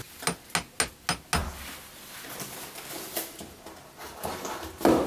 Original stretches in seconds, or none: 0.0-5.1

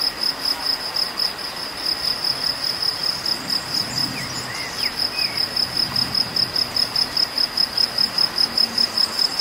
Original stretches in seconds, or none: 0.0-9.4